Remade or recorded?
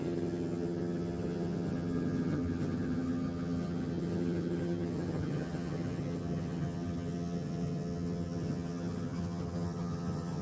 remade